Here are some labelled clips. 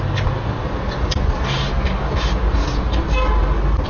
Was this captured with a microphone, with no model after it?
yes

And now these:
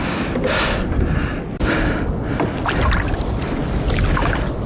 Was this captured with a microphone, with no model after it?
yes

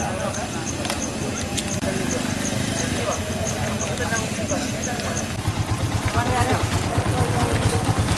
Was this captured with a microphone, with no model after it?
yes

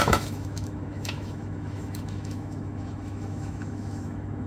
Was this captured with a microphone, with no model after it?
no